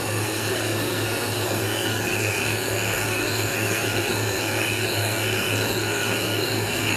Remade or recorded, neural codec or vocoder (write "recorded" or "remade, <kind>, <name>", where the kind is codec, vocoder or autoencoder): remade, codec, SNAC